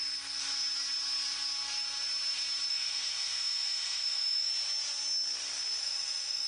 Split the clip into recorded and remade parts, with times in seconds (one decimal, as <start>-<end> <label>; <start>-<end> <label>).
0.0-2.7 recorded; 2.7-4.5 remade; 4.5-5.8 recorded; 5.8-6.5 remade